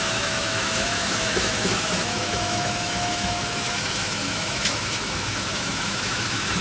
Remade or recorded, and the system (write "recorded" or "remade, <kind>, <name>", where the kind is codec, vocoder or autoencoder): remade, autoencoder, DAC-VAE